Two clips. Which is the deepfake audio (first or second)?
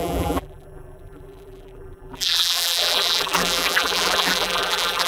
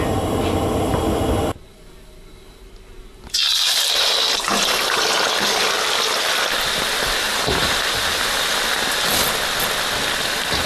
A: first